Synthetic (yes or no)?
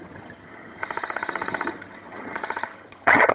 yes